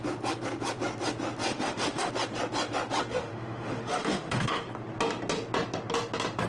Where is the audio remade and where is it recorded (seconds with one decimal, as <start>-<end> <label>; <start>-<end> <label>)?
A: 0.0-1.5 recorded; 1.5-2.1 remade; 2.1-3.1 recorded; 3.1-4.6 remade; 4.6-6.5 recorded